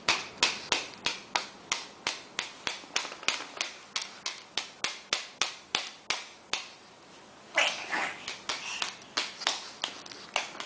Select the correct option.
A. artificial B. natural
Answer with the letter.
B